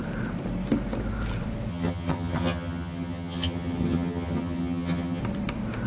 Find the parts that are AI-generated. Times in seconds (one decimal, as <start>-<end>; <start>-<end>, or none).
1.7-5.2